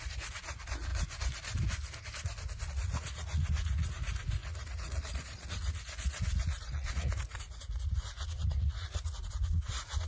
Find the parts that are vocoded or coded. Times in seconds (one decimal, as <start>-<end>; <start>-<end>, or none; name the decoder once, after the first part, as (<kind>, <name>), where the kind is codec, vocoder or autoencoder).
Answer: 0.0-0.9 (vocoder, Vocos); 2.7-10.1